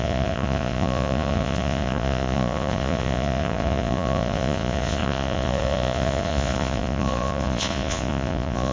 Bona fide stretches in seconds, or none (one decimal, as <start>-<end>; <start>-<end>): none